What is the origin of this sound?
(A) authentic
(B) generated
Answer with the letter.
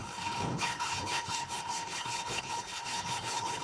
B